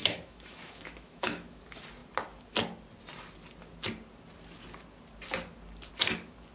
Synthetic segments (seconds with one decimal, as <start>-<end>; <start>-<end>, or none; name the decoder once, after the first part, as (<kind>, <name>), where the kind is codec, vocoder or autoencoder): 0.0-1.6 (autoencoder, DAC-VAE)